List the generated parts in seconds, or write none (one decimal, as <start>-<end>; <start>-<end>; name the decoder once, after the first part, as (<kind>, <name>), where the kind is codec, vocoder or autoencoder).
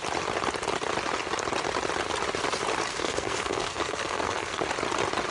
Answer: 2.9-4.6 (codec, SNAC)